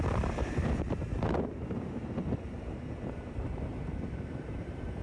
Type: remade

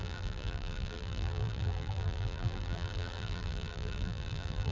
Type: remade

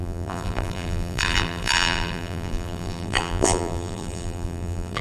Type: remade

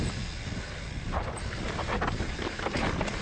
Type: recorded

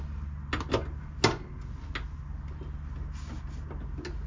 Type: recorded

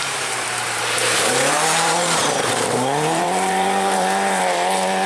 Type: remade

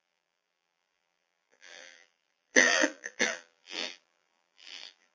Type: remade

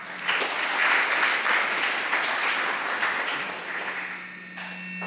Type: recorded